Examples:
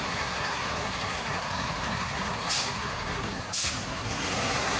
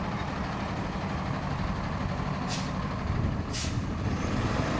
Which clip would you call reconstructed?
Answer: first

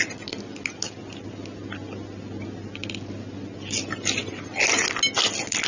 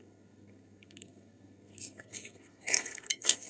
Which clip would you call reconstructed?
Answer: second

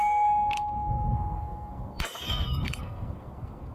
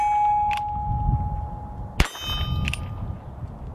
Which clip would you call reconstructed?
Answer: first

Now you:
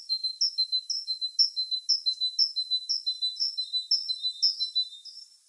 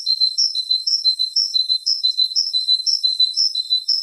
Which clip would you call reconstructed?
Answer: second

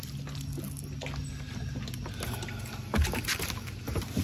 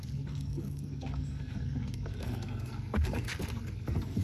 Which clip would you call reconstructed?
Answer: second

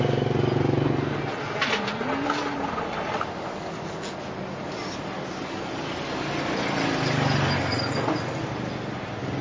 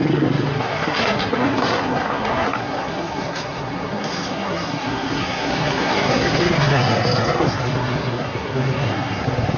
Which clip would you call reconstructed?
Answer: second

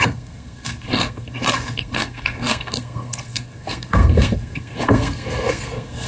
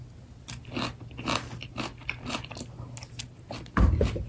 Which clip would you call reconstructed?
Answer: first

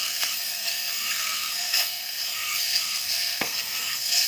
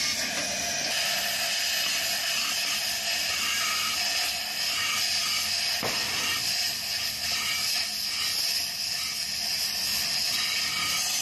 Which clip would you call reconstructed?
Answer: first